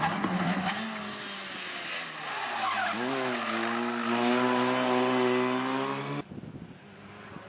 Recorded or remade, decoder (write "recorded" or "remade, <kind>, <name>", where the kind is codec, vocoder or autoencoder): recorded